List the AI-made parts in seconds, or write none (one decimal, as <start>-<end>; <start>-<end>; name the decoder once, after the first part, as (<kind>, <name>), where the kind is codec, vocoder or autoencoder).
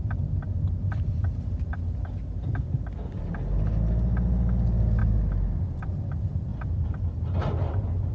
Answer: none